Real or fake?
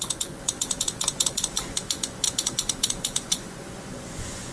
fake